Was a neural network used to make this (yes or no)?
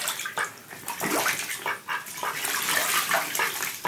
no